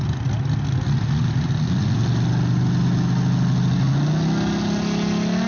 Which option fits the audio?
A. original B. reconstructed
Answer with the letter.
A